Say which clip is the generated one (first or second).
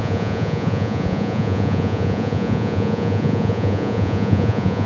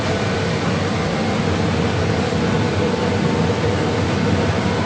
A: first